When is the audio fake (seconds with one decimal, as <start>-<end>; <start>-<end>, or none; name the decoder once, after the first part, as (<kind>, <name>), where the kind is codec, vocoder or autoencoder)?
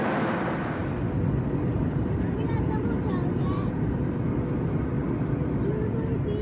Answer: 0.8-4.3 (vocoder, BigVGAN v2)